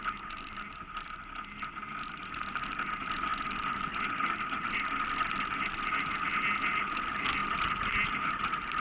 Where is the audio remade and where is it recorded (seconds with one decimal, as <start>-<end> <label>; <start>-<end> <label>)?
0.0-8.8 recorded